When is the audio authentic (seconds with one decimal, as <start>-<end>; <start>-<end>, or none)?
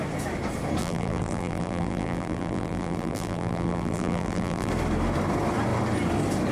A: 0.0-0.8; 4.7-6.5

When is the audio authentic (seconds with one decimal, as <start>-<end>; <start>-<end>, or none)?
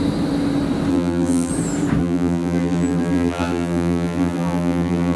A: 0.0-0.9; 1.5-2.0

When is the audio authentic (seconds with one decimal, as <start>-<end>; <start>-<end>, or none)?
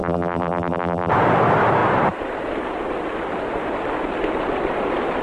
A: 1.1-5.2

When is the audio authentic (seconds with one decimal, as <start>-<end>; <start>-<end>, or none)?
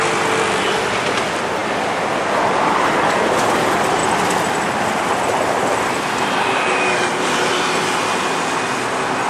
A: 0.0-4.0; 6.9-9.3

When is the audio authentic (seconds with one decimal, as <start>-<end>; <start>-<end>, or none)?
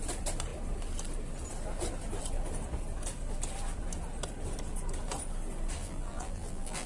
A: 0.0-5.8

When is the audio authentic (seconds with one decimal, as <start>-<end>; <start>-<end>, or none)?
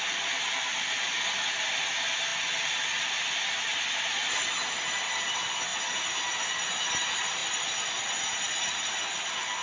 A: 5.7-7.0; 7.4-8.6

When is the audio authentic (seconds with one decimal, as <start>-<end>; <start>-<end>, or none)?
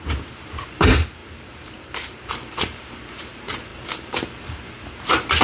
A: none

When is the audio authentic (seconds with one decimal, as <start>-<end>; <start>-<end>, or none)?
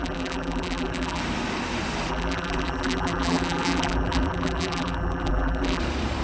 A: 1.2-2.1; 5.8-6.2